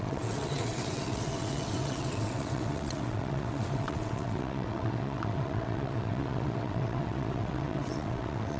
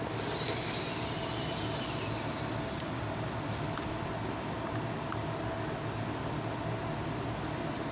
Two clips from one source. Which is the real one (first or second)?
second